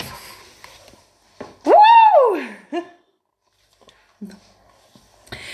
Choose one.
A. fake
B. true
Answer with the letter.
B